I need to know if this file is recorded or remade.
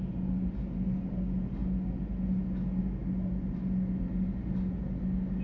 recorded